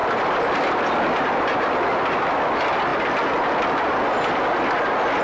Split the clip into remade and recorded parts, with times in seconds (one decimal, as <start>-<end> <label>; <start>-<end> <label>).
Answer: 0.0-5.2 recorded